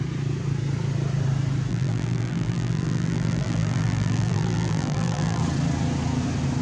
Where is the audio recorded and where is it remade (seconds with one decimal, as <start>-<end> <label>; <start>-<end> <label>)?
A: 0.0-1.7 recorded; 1.7-5.4 remade; 5.4-6.6 recorded